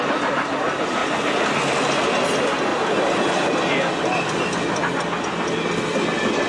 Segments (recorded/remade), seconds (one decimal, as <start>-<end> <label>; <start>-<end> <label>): 0.0-6.5 recorded